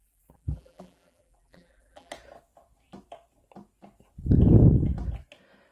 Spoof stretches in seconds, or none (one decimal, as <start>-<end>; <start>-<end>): 0.0-2.1